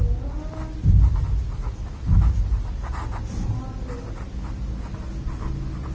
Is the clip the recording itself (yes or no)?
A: yes